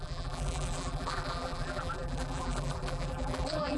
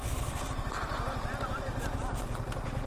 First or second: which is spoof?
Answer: first